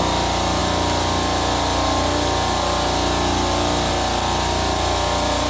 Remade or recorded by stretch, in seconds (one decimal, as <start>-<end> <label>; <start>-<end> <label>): 0.0-5.5 recorded